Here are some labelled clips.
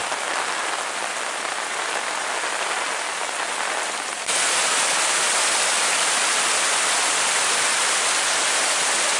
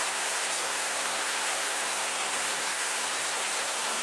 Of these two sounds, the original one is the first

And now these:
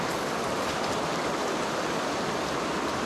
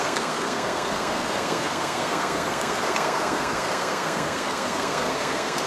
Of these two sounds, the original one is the first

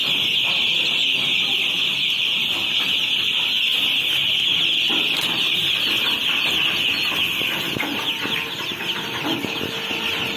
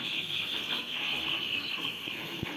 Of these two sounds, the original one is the first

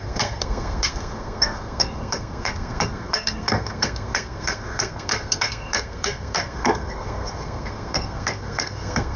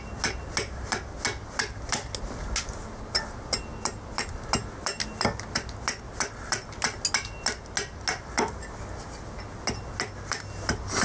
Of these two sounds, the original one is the second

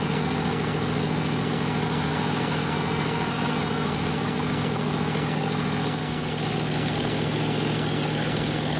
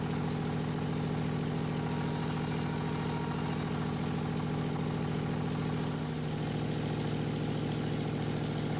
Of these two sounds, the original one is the second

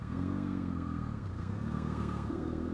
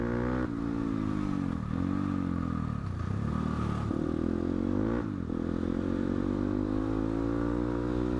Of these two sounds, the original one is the second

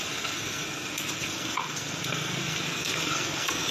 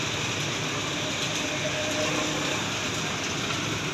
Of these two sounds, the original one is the second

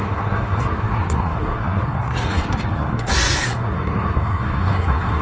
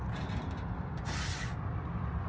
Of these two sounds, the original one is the second